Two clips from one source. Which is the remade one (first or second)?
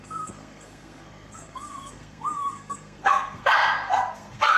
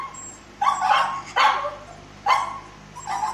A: first